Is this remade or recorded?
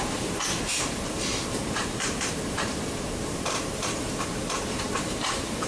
remade